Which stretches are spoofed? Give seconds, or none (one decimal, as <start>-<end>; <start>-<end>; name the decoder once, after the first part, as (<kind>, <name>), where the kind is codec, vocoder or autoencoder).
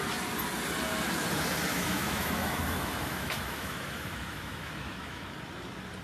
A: 1.7-5.3 (autoencoder, DAC-VAE)